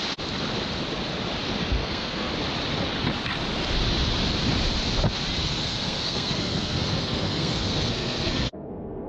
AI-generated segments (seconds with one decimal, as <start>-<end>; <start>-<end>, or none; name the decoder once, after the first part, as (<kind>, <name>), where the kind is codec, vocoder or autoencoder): 1.6-2.3 (codec, SNAC); 5.4-9.1